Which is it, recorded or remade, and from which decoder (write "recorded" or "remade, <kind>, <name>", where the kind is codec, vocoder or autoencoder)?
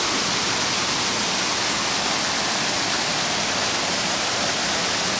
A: recorded